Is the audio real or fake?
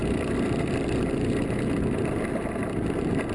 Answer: real